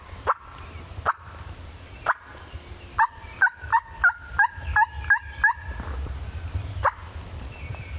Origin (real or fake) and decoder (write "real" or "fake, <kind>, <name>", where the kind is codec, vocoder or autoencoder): real